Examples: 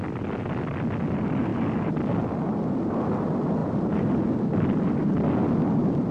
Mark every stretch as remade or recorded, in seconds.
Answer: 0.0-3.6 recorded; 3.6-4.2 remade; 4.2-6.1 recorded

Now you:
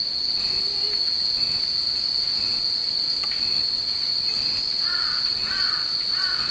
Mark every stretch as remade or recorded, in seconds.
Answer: 0.0-2.8 recorded; 2.8-3.9 remade; 3.9-6.5 recorded

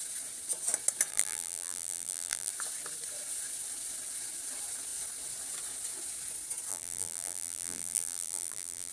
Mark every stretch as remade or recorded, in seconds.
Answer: 0.0-1.1 recorded; 1.1-2.5 remade; 2.5-6.7 recorded; 6.7-8.9 remade

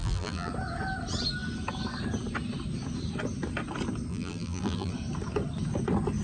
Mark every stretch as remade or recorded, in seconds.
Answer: 0.0-0.5 remade; 0.5-4.1 recorded; 4.1-4.9 remade; 4.9-6.2 recorded

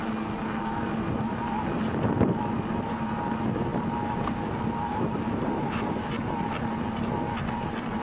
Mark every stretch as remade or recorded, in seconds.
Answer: 0.0-4.9 recorded; 4.9-5.8 remade; 5.8-8.0 recorded

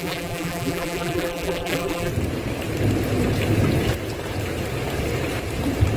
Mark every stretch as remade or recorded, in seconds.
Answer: 0.0-2.1 remade; 2.1-6.0 recorded

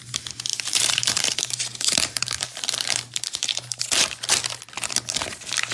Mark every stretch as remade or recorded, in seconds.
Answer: 0.0-0.5 recorded; 0.5-3.8 remade; 3.8-5.7 recorded

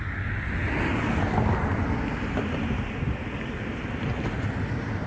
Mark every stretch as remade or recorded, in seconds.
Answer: 0.0-1.7 recorded; 1.7-5.1 remade